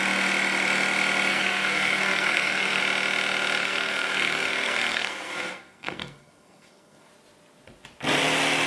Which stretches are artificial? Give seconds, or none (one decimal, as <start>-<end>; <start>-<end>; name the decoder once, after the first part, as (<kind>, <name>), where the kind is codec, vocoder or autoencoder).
1.3-2.8 (codec, SNAC); 3.6-7.1